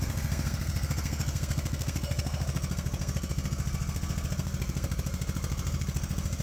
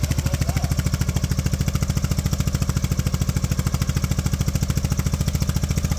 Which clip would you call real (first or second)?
second